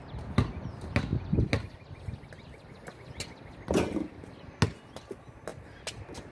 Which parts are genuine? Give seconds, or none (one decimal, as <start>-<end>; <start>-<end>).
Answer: 0.0-6.3